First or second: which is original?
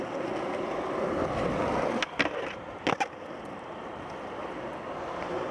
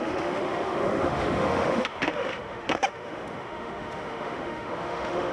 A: first